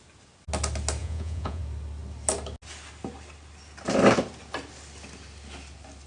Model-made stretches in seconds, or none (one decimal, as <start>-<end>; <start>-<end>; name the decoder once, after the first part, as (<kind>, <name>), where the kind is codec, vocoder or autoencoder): 1.0-1.6 (vocoder, Vocos)